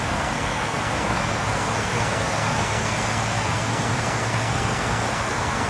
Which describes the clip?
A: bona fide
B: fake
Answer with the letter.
B